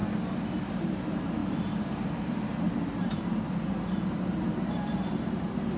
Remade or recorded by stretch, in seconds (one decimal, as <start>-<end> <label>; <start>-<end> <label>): 0.0-0.6 recorded; 0.6-5.8 remade